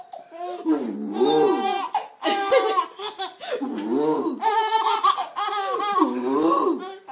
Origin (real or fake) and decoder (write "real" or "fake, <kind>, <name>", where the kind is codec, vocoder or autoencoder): real